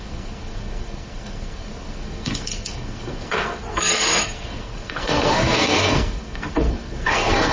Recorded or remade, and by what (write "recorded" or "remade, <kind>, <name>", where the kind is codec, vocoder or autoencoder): remade, codec, SNAC